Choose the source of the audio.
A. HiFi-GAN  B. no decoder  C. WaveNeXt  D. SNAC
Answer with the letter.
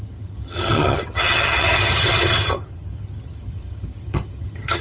A